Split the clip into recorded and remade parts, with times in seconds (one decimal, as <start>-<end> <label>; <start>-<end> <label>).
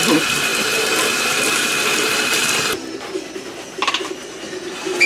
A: 0.0-0.5 recorded; 0.5-2.5 remade; 2.5-5.1 recorded